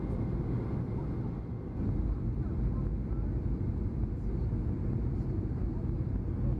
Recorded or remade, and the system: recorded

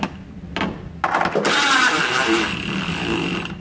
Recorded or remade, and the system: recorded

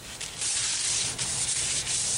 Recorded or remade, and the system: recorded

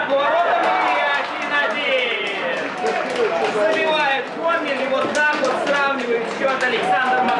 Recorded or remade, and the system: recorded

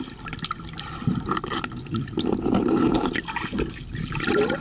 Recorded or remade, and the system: recorded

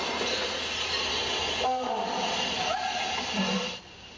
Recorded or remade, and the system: recorded